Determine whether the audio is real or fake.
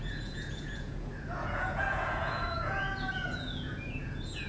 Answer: fake